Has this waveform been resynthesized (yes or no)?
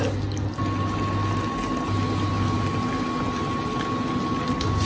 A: no